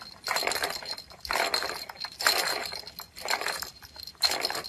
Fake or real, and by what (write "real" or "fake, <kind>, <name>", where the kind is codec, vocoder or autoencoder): real